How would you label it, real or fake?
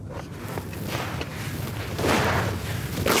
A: real